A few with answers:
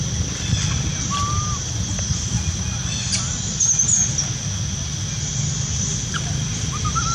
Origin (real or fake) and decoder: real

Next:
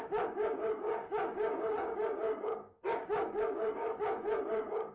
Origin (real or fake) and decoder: fake, codec, DAC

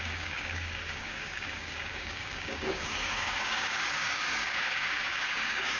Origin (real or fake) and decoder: fake, codec, DAC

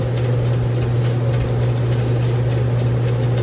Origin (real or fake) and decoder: real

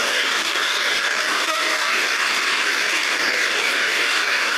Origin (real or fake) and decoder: fake, codec, DAC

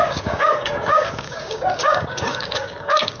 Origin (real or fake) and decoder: fake, codec, DAC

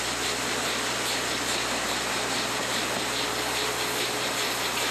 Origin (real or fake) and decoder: real